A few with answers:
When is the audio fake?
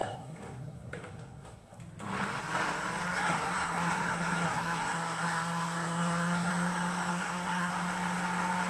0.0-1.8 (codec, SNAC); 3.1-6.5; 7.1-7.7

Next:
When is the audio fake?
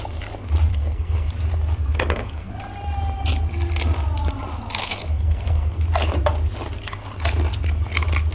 0.7-1.3 (codec, SNAC); 1.9-2.5; 4.8-5.8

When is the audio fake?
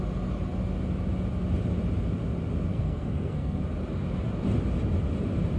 2.7-3.6 (codec, SNAC)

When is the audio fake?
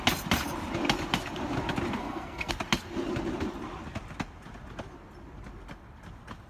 2.0-2.5 (codec, SNAC)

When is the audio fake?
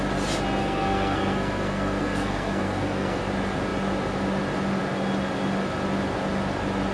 0.6-3.2 (codec, SNAC)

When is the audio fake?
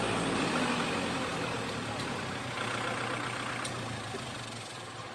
none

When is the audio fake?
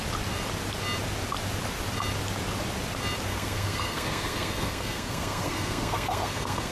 3.3-6.7 (codec, SNAC)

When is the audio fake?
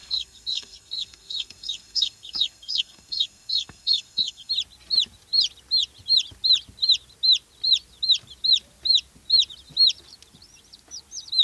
0.0-4.5 (codec, SNAC)